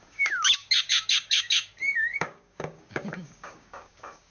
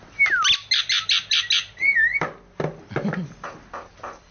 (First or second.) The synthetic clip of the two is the first